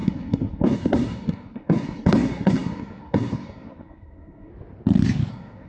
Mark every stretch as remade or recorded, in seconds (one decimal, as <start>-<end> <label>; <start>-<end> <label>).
0.0-4.5 remade; 4.5-5.3 recorded; 5.3-5.7 remade